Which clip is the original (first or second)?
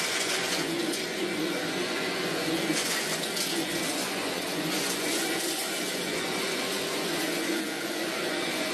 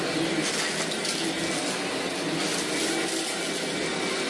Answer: second